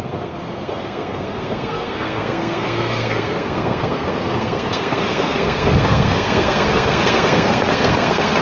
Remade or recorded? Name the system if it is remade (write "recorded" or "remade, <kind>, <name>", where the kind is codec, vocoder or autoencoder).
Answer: remade, codec, SNAC